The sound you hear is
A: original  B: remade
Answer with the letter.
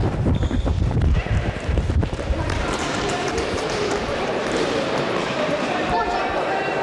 B